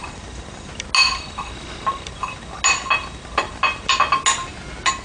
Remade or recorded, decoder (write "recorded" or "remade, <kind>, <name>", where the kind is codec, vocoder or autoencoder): recorded